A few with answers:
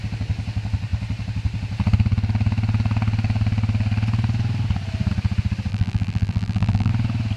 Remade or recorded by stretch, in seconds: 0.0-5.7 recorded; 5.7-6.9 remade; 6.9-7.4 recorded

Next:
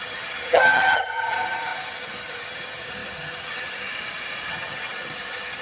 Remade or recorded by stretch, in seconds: 0.0-3.9 remade; 3.9-4.5 recorded; 4.5-5.6 remade

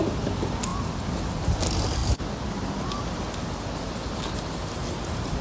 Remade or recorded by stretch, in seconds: 0.0-5.4 recorded

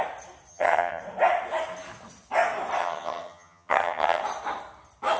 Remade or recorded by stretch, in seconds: 0.0-0.5 recorded; 0.5-1.0 remade; 1.0-2.8 recorded; 2.8-4.2 remade; 4.2-5.2 recorded

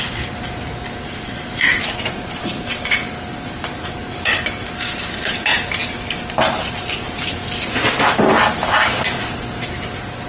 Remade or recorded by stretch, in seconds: 0.0-10.3 recorded